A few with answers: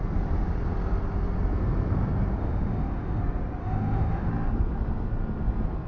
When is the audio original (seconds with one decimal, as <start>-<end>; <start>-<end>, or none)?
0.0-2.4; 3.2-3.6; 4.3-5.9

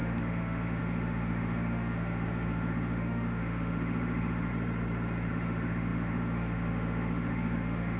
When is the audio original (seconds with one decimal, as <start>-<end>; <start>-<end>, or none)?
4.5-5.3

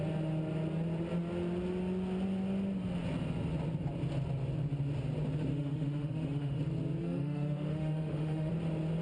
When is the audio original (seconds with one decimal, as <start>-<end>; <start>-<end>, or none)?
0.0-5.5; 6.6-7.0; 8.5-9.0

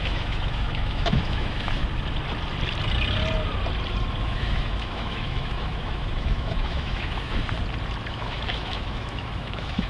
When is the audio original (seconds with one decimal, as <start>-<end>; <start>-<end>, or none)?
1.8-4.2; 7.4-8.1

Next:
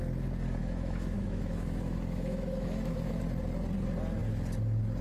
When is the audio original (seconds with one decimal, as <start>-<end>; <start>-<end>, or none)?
0.0-0.6; 3.2-5.0

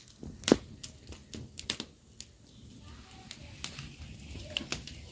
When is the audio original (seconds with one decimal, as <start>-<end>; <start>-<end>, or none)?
0.0-5.1

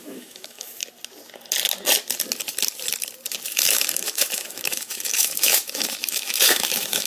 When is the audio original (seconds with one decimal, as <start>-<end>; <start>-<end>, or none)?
0.8-3.5